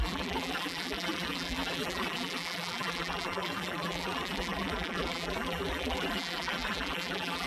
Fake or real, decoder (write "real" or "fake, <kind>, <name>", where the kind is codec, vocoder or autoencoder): fake, vocoder, BigVGAN v2